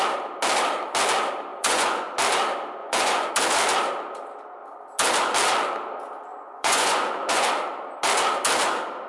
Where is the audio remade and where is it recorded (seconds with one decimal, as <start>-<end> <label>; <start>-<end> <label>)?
0.0-1.5 recorded; 1.5-2.1 remade; 2.1-2.8 recorded; 2.8-3.3 remade; 3.3-6.3 recorded; 6.3-7.5 remade; 7.5-9.1 recorded